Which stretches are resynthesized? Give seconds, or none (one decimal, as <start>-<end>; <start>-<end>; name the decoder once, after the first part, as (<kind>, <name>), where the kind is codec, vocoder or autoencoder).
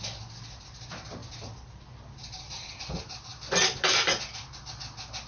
none